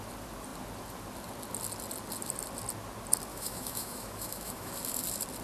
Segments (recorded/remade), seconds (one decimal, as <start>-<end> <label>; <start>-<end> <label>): 0.0-3.3 recorded; 3.3-4.7 remade; 4.7-5.4 recorded